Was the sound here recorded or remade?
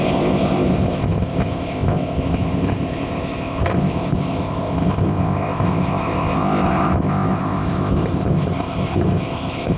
remade